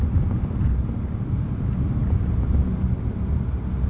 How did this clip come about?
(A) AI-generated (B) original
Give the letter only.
B